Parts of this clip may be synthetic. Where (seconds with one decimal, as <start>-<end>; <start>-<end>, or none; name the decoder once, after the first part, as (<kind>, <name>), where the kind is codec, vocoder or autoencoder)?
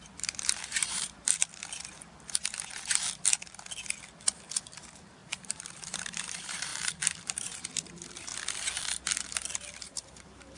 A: 0.0-1.4 (vocoder, BigVGAN v2); 4.6-8.3; 9.8-10.6